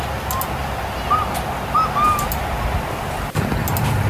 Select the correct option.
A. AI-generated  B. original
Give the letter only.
B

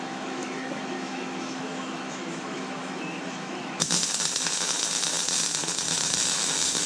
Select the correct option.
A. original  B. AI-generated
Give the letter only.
B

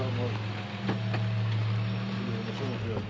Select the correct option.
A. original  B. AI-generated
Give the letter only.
A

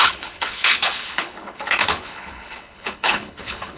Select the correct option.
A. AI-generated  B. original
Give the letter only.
A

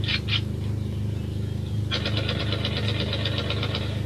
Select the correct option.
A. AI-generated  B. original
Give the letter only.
B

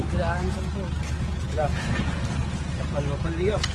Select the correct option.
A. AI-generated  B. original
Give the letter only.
B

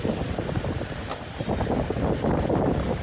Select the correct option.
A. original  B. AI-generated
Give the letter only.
A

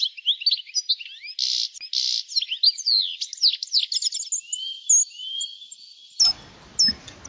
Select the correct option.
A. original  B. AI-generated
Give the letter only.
A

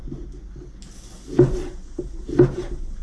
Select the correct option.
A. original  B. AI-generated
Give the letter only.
A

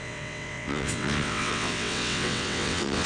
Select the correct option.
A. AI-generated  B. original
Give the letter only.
A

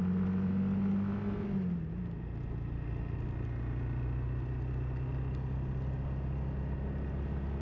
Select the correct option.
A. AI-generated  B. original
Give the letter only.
B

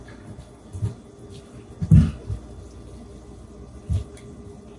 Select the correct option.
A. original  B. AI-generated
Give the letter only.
A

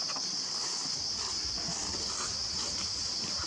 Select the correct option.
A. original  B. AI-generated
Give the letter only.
A